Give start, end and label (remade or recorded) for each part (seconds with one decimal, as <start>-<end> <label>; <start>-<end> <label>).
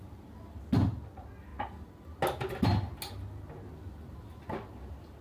0.0-5.2 recorded